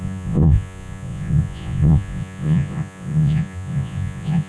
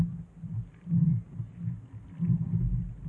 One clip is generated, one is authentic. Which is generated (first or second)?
first